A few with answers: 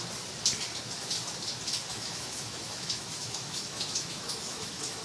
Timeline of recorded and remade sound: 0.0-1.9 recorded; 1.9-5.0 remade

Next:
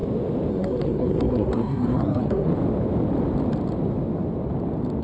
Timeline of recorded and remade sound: 0.0-0.5 recorded; 0.5-2.5 remade; 2.5-5.0 recorded